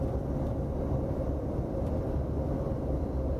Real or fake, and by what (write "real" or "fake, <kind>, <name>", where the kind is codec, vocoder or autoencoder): real